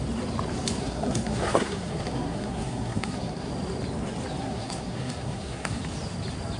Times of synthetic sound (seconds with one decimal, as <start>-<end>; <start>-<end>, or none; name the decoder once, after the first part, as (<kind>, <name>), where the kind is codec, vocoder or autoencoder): 0.8-3.5 (codec, SNAC); 4.4-5.8